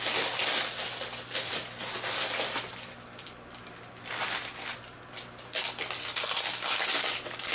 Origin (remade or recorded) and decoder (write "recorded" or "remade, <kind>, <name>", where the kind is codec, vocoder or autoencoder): recorded